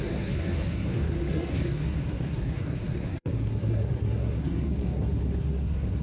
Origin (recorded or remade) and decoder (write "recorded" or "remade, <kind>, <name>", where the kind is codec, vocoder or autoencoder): remade, codec, SNAC